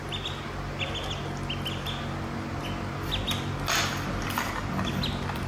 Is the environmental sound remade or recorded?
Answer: recorded